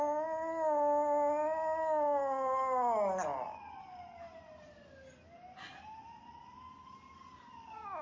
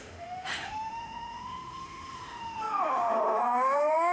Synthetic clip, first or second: second